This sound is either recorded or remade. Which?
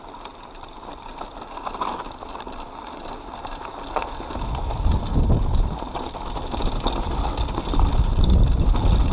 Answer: recorded